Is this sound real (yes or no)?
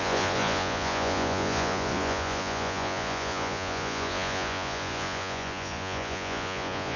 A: no